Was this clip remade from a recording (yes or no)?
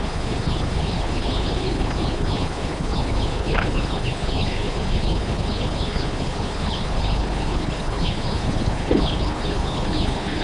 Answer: yes